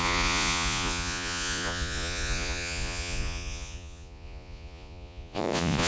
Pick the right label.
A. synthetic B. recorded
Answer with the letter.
A